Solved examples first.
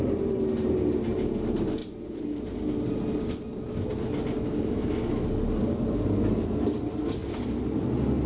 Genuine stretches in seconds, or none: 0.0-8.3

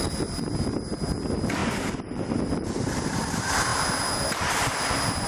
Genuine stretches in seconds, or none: none

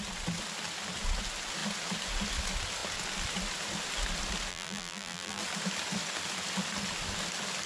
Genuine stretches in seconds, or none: 0.0-4.5; 5.4-7.7

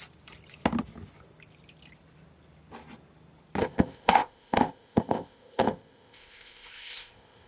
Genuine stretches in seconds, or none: 0.0-3.6